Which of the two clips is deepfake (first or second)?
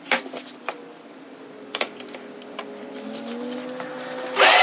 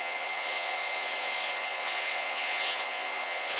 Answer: second